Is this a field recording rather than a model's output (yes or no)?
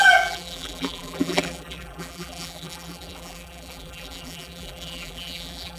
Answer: no